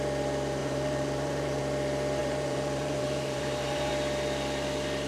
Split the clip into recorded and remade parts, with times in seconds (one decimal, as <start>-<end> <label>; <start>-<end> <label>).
0.0-0.6 recorded; 0.6-1.6 remade; 1.6-2.2 recorded; 2.2-3.9 remade; 3.9-5.1 recorded